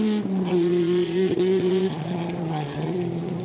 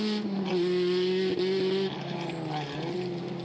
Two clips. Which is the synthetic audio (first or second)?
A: first